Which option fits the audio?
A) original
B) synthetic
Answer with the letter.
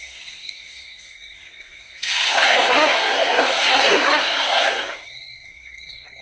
B